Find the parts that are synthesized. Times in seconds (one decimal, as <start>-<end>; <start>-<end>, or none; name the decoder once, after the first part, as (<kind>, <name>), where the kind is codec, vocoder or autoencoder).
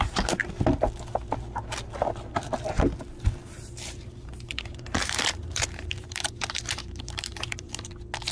3.4-7.9 (vocoder, BigVGAN v2)